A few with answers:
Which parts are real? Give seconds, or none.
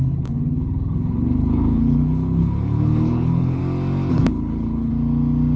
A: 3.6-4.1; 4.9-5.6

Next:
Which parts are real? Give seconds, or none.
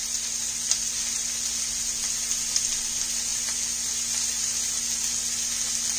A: 0.0-6.0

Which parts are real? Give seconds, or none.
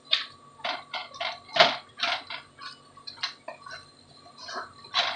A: 0.0-5.2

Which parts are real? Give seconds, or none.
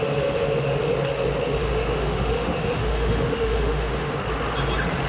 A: 0.8-1.6; 4.1-5.1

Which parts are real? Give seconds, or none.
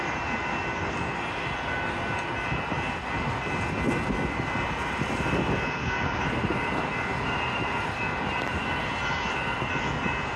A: 0.0-10.4